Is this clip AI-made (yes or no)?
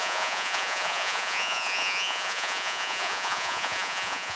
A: yes